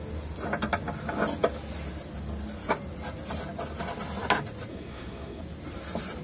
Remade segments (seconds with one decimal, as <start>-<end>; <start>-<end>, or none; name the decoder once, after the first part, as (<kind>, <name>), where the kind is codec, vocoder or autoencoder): 4.7-5.4 (codec, SNAC)